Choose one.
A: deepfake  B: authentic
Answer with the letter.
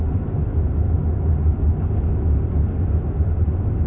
B